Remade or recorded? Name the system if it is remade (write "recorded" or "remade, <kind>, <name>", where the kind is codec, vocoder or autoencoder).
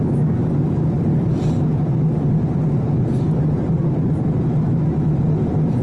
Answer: recorded